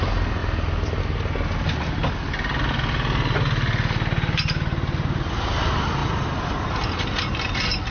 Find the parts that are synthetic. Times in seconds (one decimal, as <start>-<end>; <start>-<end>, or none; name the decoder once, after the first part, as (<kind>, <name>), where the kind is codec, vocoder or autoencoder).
none